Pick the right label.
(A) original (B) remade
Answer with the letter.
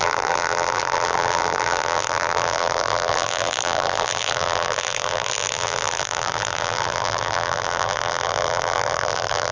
B